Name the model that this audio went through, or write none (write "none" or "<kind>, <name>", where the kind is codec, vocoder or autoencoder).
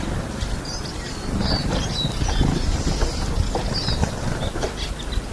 none